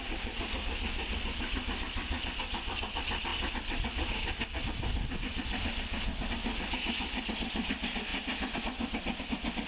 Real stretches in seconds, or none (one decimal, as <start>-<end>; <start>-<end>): 0.0-9.7